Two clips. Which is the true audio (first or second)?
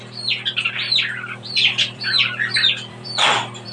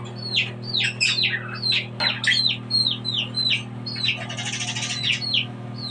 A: second